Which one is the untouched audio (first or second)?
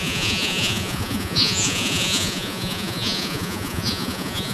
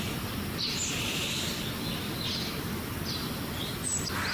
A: second